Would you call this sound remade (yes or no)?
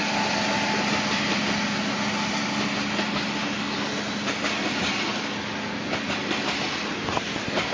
no